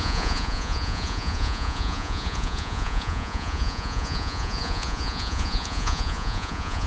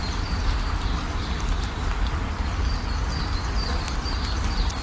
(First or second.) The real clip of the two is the second